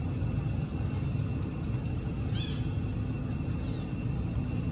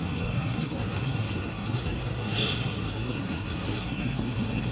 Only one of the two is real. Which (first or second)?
first